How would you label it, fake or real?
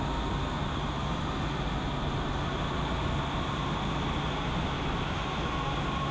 real